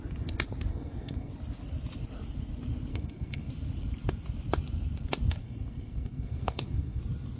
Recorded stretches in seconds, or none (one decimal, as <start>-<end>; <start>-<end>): 0.0-0.7; 1.3-2.9; 3.5-5.4; 7.0-7.4